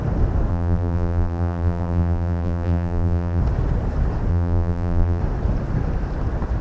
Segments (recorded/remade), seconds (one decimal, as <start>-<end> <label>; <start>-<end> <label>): 0.0-0.5 recorded; 0.5-3.4 remade; 3.4-4.3 recorded; 4.3-5.2 remade; 5.2-6.6 recorded